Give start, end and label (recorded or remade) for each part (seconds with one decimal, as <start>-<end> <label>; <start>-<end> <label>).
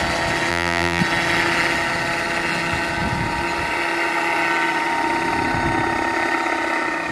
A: 0.0-0.5 recorded; 0.5-1.0 remade; 1.0-7.1 recorded